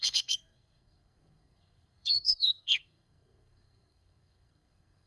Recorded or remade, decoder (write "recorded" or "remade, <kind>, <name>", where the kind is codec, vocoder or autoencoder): remade, codec, SNAC